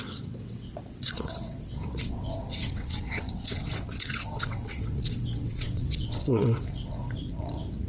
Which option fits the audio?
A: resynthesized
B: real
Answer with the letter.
A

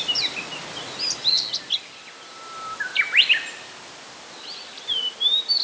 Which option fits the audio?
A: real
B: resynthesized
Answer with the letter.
A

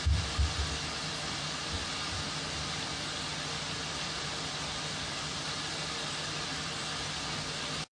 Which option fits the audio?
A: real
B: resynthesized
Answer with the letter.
A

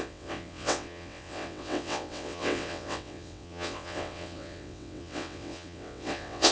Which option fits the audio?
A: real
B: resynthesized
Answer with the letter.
B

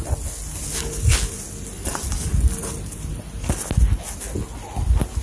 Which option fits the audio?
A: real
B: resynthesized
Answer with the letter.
A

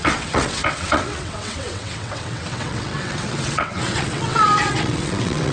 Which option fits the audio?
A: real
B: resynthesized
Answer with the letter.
B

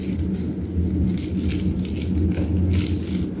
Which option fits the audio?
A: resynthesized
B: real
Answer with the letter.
B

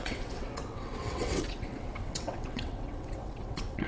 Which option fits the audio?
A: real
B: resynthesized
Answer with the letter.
B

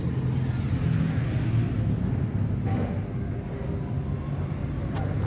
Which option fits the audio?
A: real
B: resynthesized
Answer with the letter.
A